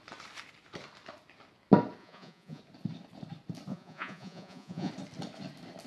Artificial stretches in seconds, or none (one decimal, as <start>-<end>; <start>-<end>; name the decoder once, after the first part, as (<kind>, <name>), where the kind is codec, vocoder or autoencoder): 2.0-2.6 (vocoder, Vocos); 3.7-4.9